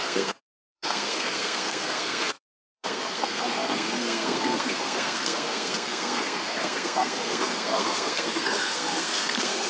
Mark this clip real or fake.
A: fake